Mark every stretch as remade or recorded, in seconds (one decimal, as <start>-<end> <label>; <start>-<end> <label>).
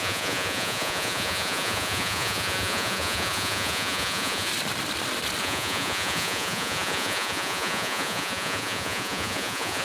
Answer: 0.0-4.5 remade; 4.5-5.4 recorded; 5.4-9.8 remade